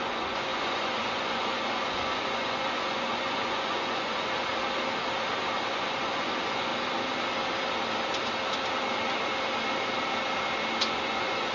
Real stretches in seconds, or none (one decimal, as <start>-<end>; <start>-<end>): 4.5-5.7; 6.7-10.8